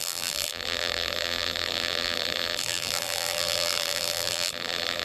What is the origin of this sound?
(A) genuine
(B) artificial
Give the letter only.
B